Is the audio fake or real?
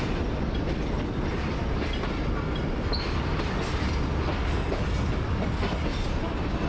real